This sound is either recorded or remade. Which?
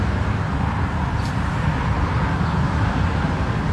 recorded